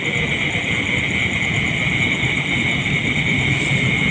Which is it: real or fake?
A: real